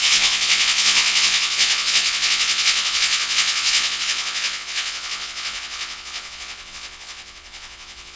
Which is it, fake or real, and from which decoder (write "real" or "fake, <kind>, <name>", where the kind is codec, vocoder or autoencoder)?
fake, vocoder, WaveNeXt